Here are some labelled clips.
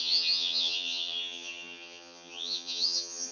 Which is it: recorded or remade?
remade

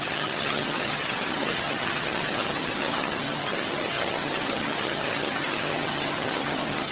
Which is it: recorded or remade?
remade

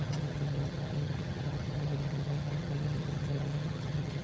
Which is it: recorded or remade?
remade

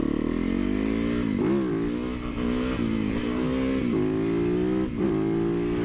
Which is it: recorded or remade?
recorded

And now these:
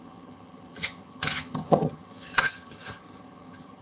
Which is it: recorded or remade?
remade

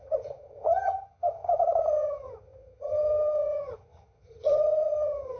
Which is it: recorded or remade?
remade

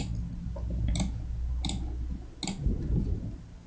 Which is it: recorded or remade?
recorded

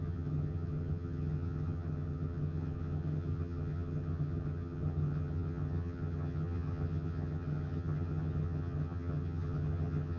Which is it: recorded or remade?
remade